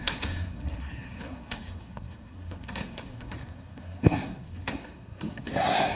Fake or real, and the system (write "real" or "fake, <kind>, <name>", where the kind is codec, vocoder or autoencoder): fake, codec, SNAC